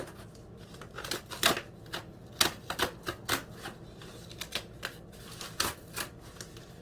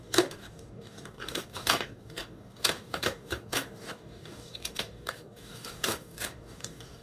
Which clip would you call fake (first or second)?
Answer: second